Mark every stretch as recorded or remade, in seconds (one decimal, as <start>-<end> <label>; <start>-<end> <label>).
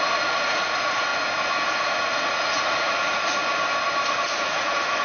0.0-1.1 remade; 1.1-1.7 recorded; 1.7-3.4 remade; 3.4-4.1 recorded; 4.1-5.0 remade